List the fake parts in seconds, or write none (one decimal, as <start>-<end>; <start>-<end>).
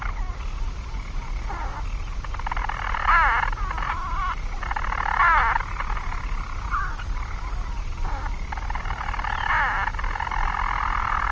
none